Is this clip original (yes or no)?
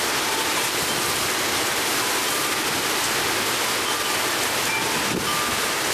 yes